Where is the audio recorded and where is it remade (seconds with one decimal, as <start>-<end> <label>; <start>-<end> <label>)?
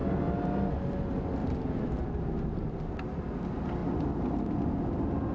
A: 0.0-1.4 recorded; 1.4-3.1 remade; 3.1-5.3 recorded